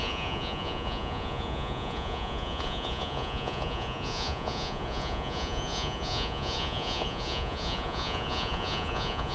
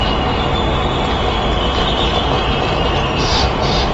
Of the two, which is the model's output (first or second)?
first